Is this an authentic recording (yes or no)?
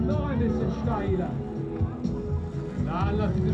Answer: yes